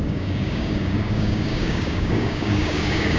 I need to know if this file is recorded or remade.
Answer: remade